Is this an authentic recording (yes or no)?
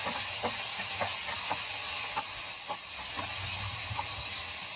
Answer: yes